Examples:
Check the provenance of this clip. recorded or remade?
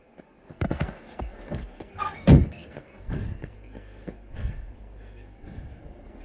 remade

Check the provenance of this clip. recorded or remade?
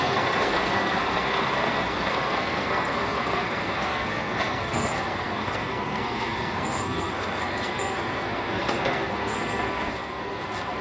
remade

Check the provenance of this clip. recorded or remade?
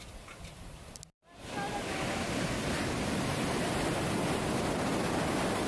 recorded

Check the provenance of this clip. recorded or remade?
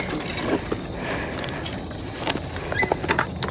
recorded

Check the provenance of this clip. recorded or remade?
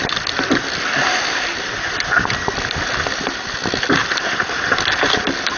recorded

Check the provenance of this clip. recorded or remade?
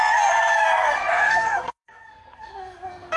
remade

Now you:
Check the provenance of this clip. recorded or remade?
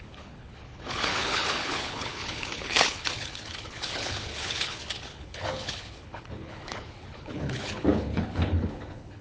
remade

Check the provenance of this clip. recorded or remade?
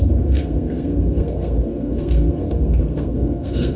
remade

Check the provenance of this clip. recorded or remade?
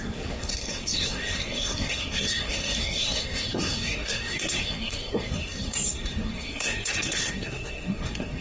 remade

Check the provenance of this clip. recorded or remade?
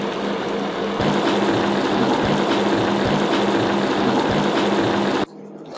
recorded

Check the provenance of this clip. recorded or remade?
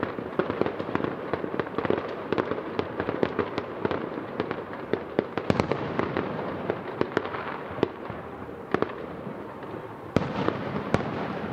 remade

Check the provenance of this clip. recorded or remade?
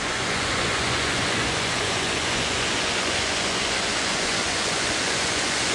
remade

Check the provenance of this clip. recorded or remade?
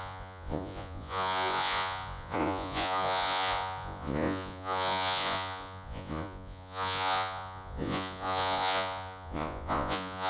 remade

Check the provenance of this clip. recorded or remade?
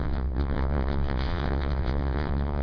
remade